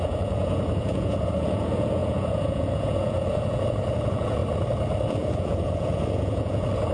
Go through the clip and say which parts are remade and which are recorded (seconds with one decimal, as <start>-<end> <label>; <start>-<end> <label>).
0.0-4.4 remade; 4.4-5.1 recorded; 5.1-6.9 remade